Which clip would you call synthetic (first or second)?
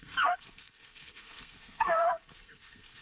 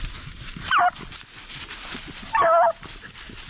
first